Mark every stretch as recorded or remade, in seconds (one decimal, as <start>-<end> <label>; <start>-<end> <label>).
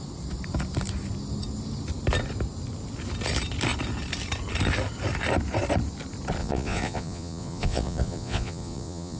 0.0-6.4 recorded; 6.4-9.2 remade